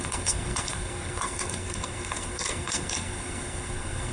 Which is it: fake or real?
fake